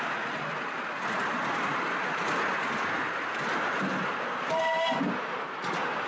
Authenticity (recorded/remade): recorded